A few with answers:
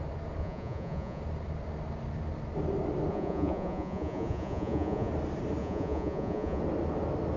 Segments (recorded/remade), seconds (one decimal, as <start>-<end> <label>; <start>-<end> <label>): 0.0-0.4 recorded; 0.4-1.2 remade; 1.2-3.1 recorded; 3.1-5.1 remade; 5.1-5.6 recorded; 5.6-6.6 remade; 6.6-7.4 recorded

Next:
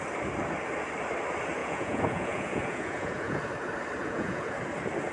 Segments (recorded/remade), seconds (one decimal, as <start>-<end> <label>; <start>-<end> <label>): 0.0-1.6 recorded; 1.6-3.4 remade; 3.4-4.0 recorded; 4.0-4.6 remade; 4.6-5.1 recorded

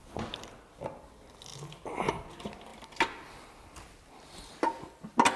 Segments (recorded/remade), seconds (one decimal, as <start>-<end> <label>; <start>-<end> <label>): 0.0-5.4 recorded

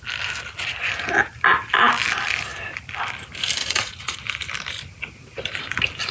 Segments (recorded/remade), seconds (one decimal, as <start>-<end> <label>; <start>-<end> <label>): 0.0-3.6 recorded; 3.6-4.2 remade; 4.2-6.1 recorded

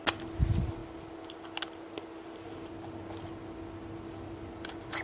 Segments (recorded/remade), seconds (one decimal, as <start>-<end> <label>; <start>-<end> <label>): 0.0-5.0 recorded

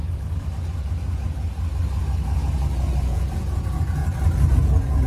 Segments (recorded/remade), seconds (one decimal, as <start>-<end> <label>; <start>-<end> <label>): 0.0-3.0 recorded; 3.0-4.0 remade; 4.0-4.5 recorded; 4.5-5.1 remade

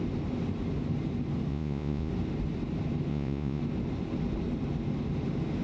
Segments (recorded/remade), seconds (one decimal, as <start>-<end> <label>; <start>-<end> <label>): 0.0-1.5 recorded; 1.5-2.1 remade; 2.1-3.1 recorded; 3.1-3.6 remade; 3.6-5.6 recorded